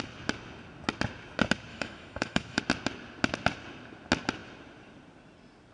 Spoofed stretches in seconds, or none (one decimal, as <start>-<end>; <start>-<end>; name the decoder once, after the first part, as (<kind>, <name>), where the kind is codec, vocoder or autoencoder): 1.7-2.6 (autoencoder, DAC-VAE)